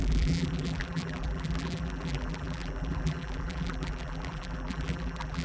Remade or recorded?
remade